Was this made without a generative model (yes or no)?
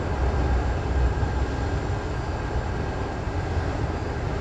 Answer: yes